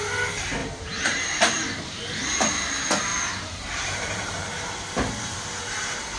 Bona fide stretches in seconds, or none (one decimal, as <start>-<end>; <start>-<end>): 0.0-0.6; 2.4-3.1; 4.7-6.2